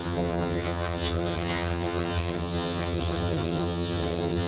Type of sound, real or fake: fake